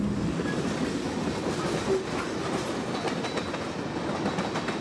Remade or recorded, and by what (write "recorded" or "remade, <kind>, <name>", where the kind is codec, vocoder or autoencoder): recorded